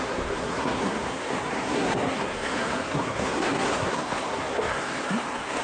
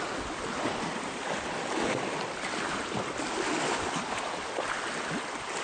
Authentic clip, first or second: second